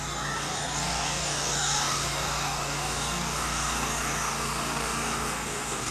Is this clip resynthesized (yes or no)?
yes